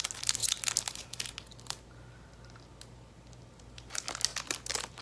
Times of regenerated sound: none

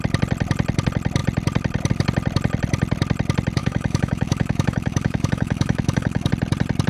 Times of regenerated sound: 3.6-6.3 (autoencoder, DAC-VAE)

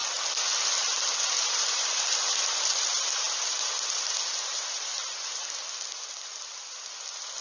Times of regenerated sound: 1.7-5.3 (vocoder, BigVGAN v2)

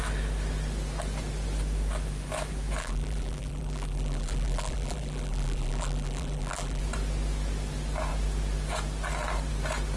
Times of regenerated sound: 2.8-6.8 (vocoder, BigVGAN v2)